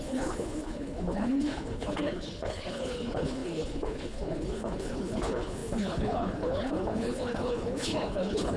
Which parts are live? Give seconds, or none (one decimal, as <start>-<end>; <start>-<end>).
none